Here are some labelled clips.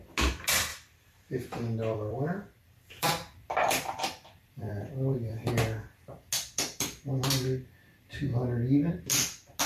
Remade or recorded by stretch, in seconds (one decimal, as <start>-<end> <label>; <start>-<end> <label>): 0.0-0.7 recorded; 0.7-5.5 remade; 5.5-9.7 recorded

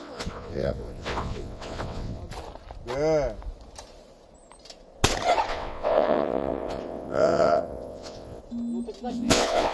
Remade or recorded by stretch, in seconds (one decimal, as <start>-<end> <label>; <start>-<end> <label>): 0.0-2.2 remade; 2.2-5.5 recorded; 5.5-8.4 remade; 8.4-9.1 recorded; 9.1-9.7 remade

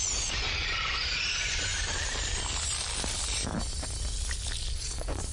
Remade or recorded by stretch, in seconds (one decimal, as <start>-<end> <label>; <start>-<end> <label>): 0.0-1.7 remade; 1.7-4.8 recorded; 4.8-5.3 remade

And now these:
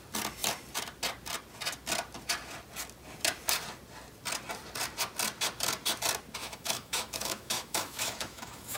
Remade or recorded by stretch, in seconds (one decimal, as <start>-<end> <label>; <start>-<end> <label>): 0.0-6.4 recorded; 6.4-8.8 remade